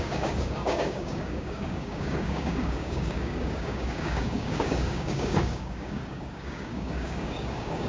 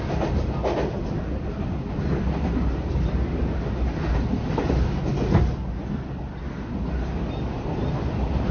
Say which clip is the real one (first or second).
second